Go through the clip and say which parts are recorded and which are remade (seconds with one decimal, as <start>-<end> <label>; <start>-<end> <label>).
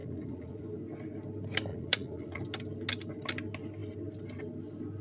0.0-0.6 remade; 0.6-1.7 recorded; 1.7-2.4 remade; 2.4-5.0 recorded